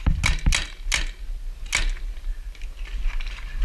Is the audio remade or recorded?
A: recorded